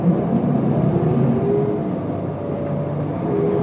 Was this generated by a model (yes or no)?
no